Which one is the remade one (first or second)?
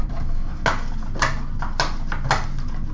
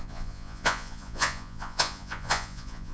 second